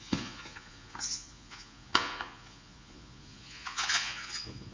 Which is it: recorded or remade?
remade